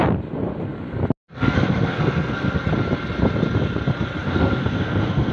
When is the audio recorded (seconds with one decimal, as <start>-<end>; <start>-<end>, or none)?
0.0-1.3; 2.6-4.2